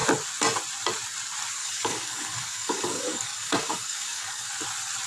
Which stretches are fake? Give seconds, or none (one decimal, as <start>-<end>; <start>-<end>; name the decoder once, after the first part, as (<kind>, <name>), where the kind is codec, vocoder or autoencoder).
1.6-4.5 (codec, DAC)